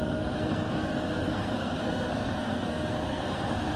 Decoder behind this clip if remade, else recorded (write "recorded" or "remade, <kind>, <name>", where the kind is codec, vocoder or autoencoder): remade, codec, SNAC